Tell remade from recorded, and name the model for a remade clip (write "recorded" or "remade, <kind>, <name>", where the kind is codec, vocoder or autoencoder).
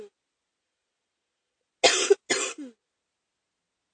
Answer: recorded